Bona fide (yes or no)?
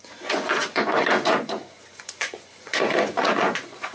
no